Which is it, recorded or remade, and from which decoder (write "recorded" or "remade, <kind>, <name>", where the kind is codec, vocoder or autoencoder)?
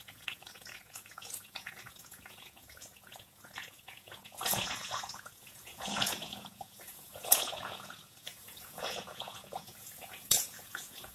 remade, vocoder, Vocos